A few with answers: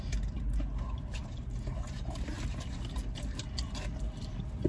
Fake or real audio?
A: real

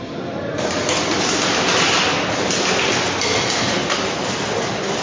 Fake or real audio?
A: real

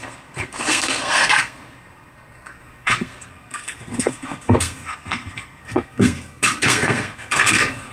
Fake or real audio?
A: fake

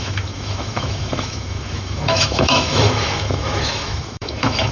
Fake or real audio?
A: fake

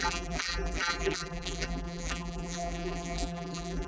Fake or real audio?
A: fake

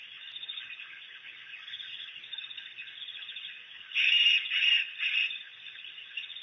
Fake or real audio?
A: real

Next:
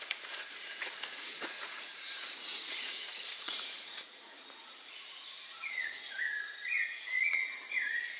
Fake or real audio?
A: fake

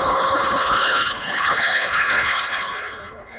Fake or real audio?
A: fake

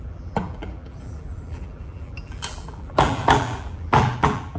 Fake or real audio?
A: fake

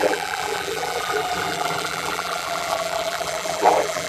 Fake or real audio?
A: fake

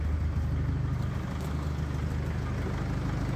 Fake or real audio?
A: real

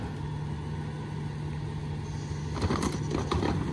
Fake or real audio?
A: real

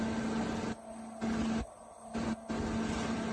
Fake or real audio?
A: real